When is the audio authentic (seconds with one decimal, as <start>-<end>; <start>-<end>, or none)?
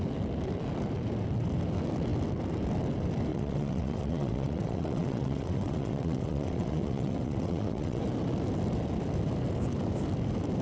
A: 0.0-3.3; 8.0-10.6